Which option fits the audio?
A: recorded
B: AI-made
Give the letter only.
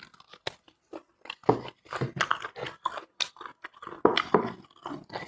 A